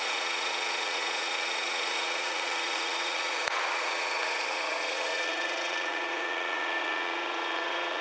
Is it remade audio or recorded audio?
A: remade